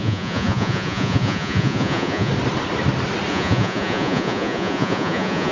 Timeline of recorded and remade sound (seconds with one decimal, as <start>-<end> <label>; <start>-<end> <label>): 0.0-2.3 remade; 2.3-3.3 recorded; 3.3-5.5 remade